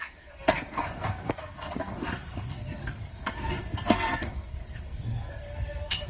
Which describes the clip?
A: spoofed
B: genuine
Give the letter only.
A